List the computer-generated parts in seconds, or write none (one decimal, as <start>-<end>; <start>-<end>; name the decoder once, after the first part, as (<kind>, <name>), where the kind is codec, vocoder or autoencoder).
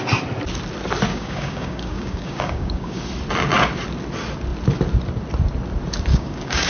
1.1-3.0 (codec, DAC); 6.1-6.7